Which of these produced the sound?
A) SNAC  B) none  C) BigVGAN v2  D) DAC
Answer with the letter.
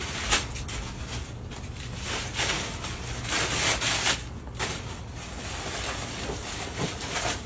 B